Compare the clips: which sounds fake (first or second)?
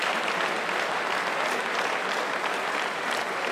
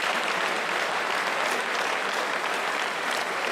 second